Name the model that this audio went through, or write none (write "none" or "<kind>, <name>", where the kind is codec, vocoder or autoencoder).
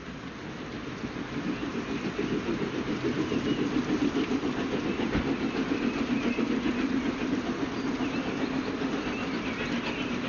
none